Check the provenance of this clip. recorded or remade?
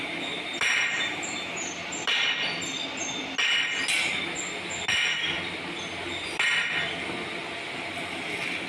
recorded